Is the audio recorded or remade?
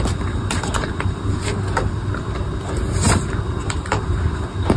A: recorded